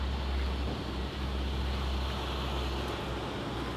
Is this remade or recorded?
recorded